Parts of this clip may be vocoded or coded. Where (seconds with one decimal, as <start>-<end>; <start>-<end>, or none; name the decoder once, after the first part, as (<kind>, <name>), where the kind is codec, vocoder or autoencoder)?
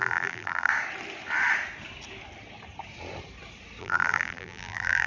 0.0-0.7 (vocoder, BigVGAN v2); 3.8-5.1